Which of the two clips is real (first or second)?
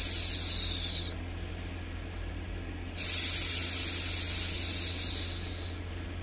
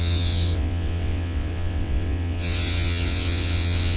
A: first